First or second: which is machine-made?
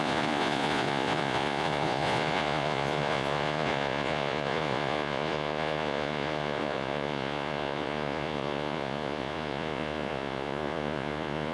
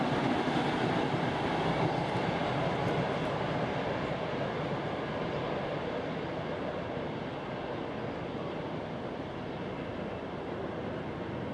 first